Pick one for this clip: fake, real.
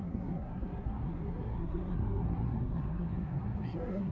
fake